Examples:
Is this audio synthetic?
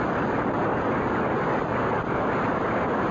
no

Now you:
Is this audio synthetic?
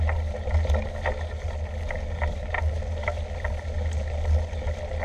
no